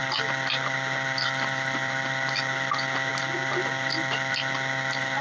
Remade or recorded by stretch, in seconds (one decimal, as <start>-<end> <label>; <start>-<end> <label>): 0.0-5.2 recorded